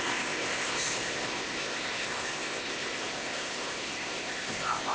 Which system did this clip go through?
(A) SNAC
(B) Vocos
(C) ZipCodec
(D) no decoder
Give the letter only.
C